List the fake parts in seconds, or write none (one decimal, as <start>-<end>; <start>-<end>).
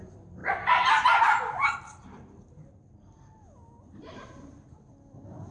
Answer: 0.4-1.2; 1.6-4.9